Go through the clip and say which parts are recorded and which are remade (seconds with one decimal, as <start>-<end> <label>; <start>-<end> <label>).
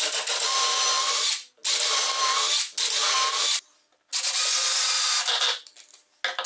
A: 0.0-6.5 recorded